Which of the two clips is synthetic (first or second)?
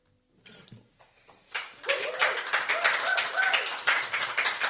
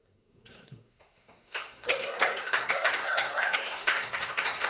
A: second